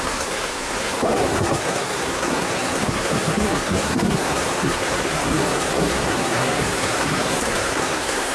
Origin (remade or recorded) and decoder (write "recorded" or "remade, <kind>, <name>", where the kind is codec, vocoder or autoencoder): remade, codec, SNAC